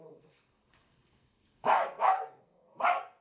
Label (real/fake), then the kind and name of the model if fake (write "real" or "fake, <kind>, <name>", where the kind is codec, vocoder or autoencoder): fake, codec, SNAC